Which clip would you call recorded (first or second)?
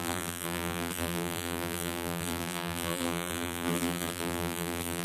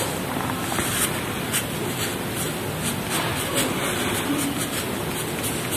second